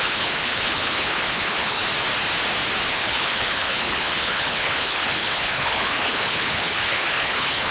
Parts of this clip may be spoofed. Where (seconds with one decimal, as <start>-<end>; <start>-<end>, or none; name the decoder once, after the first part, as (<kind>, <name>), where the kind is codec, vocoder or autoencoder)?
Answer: 0.0-1.8 (codec, HILCodec); 2.9-7.7